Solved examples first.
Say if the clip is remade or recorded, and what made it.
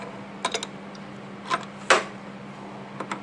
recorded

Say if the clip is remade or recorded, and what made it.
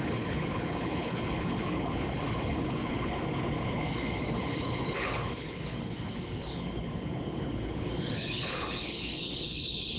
remade, codec, HILCodec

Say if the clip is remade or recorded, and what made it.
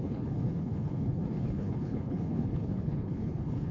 remade, codec, HILCodec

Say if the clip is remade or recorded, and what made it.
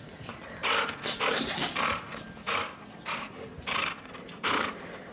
recorded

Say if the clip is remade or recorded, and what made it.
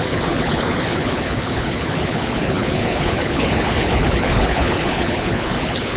remade, codec, HILCodec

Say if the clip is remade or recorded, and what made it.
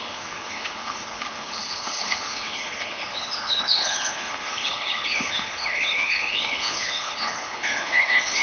remade, codec, HILCodec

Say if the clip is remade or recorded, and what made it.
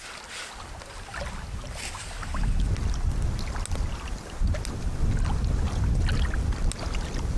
recorded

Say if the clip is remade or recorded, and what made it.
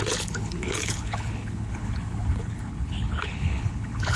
remade, codec, HILCodec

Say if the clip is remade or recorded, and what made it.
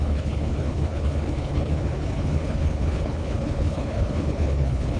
remade, codec, HILCodec